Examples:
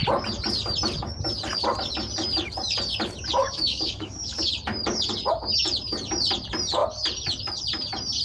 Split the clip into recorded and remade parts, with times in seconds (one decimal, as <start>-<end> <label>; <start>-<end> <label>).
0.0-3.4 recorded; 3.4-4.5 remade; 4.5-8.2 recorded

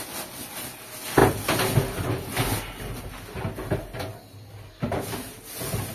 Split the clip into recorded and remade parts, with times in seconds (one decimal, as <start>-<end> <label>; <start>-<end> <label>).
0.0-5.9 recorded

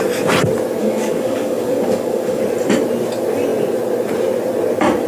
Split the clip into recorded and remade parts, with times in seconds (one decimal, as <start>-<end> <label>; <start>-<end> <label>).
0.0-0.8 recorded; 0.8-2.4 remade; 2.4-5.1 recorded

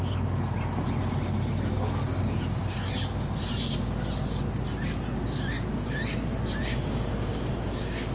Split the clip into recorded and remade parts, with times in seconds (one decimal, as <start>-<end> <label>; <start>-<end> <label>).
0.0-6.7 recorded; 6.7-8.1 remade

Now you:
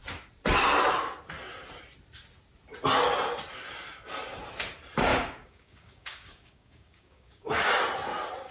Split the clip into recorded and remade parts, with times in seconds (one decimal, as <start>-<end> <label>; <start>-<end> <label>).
0.0-5.1 recorded; 5.1-7.7 remade; 7.7-8.5 recorded